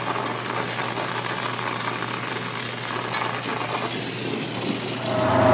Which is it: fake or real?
real